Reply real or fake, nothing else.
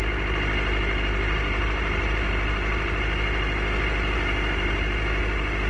real